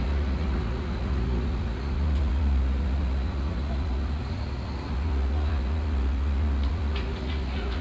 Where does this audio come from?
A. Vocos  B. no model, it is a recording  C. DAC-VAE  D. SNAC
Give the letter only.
A